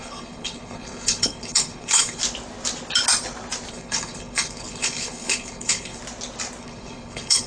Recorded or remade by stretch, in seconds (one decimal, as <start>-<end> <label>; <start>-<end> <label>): 0.0-2.2 remade; 2.2-3.7 recorded; 3.7-6.0 remade; 6.0-6.6 recorded; 6.6-7.5 remade